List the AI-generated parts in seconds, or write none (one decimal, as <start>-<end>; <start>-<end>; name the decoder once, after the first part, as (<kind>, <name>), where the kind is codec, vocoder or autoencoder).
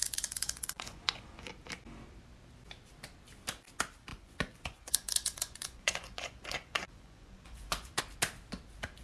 0.0-1.5 (vocoder, Vocos); 4.1-8.0